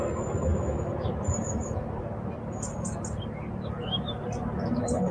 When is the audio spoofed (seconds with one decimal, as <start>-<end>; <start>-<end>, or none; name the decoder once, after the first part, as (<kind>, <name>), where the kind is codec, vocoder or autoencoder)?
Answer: none